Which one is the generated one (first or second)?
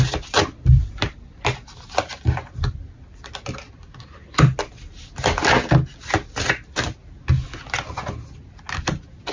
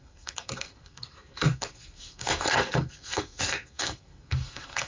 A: second